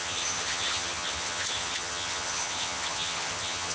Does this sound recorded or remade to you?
remade